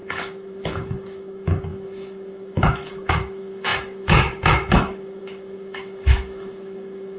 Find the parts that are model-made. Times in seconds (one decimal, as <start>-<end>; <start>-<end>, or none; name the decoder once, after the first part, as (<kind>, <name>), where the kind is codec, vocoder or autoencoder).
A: 0.0-7.2 (autoencoder, DAC-VAE)